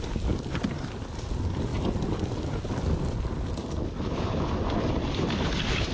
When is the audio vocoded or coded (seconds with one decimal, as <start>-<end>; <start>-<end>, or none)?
none